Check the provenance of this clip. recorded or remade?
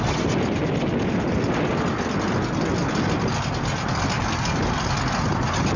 recorded